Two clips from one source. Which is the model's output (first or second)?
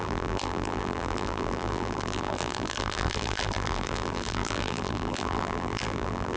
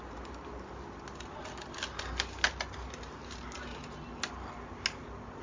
first